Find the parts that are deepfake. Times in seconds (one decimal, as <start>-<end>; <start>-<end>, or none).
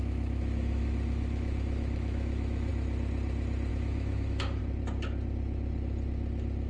0.0-2.7; 3.7-4.6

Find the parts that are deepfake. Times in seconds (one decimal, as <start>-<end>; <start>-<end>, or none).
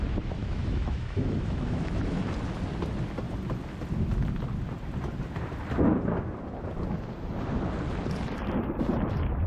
0.4-2.2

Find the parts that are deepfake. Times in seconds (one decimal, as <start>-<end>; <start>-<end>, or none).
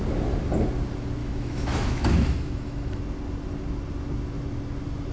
1.2-3.0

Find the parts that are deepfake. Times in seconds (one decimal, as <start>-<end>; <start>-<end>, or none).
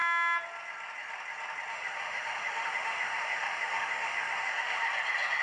1.7-4.9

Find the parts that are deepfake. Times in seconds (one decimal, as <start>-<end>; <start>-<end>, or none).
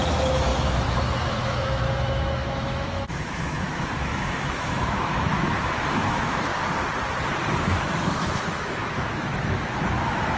0.0-6.5; 7.5-10.4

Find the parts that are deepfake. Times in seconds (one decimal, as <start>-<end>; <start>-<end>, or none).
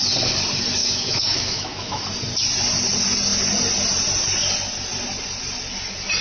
0.8-2.0